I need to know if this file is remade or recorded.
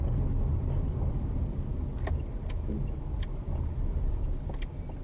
recorded